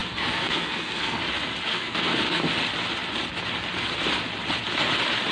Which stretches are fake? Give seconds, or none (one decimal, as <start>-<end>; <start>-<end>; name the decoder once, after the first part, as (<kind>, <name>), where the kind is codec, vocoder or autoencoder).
0.0-1.2 (codec, SNAC); 1.7-2.4